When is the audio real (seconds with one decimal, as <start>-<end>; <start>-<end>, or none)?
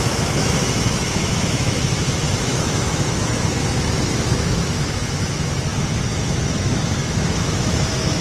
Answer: none